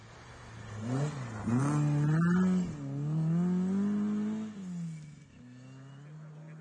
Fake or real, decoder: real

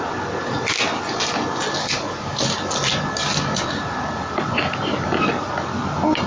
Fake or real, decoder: real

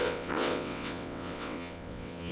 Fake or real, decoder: fake, vocoder, WaveNeXt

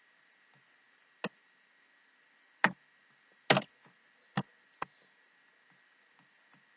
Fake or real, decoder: real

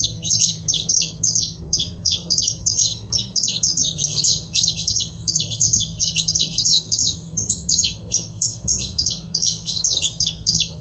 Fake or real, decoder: fake, codec, SNAC